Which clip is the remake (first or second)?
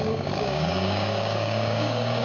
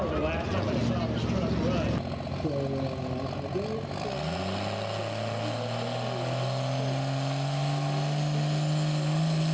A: first